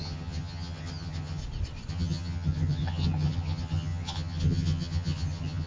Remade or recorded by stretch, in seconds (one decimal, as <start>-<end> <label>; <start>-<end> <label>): 0.0-1.4 remade; 1.4-1.9 recorded; 1.9-5.7 remade